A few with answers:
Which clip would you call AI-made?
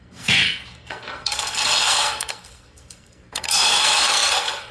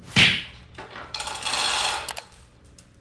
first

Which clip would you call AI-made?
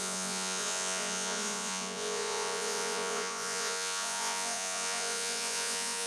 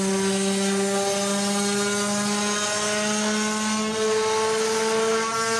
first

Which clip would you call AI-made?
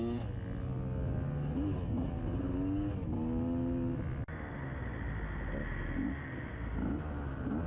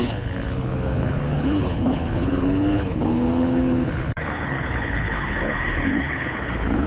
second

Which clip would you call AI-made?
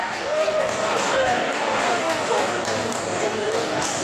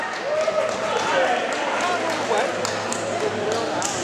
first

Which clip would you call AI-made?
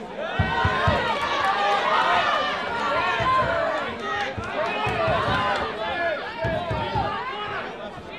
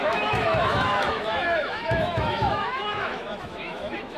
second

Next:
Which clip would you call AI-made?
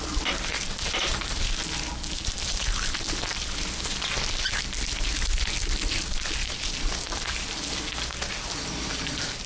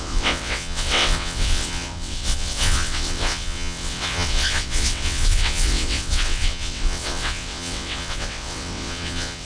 second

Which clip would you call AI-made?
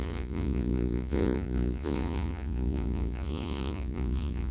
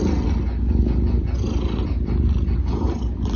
first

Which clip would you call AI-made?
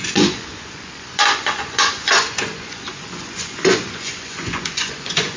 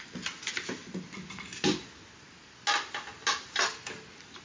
first